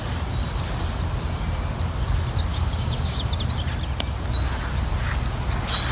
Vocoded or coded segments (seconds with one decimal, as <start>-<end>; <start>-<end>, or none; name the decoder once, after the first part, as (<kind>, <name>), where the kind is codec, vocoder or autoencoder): 2.5-3.2 (codec, DAC)